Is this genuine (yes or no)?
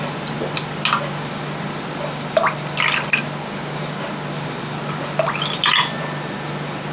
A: yes